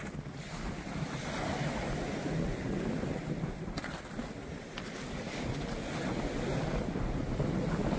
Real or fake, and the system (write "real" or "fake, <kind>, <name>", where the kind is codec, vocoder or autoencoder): real